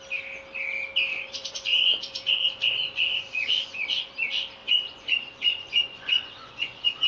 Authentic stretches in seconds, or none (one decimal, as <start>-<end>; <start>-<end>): 0.0-1.1; 4.1-4.6